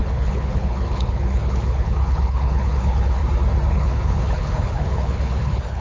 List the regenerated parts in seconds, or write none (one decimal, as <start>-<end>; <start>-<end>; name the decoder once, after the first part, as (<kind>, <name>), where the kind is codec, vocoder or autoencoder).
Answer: 0.0-3.2 (codec, HILCodec); 3.7-5.8